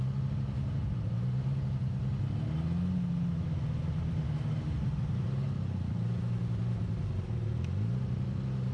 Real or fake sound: real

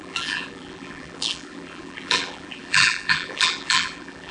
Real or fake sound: fake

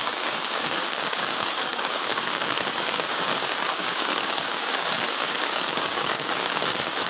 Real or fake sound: fake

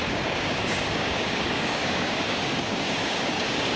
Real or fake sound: fake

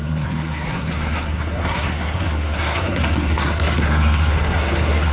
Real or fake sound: fake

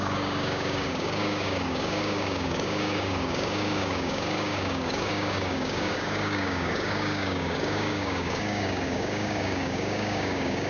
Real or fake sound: fake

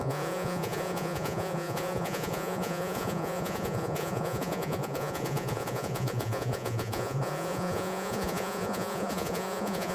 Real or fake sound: fake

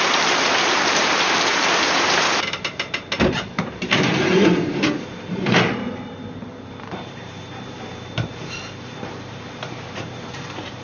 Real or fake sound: fake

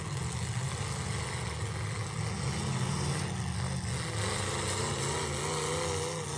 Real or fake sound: real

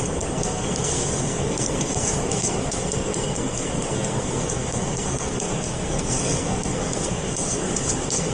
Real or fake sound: fake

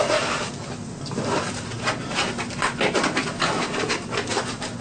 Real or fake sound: real